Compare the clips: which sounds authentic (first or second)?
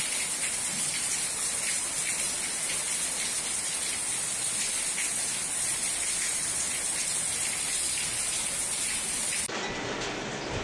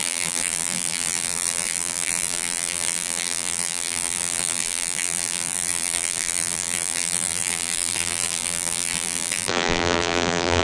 first